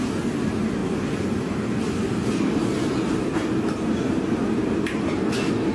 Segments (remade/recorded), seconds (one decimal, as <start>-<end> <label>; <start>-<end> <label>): 0.0-5.7 recorded